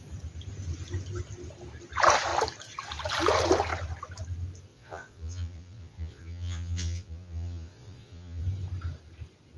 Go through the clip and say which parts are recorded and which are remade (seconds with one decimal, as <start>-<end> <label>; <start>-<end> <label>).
0.0-4.7 recorded; 4.7-8.4 remade; 8.4-9.6 recorded